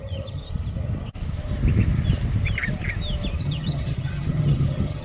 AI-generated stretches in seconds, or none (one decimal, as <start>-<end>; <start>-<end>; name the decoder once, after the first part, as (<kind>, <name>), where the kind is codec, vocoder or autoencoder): 0.0-0.4 (vocoder, HiFi-GAN); 3.4-5.0